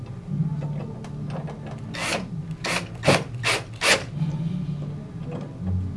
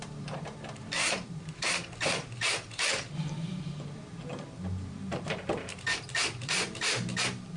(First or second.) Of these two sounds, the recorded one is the first